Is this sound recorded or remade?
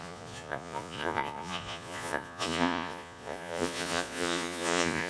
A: remade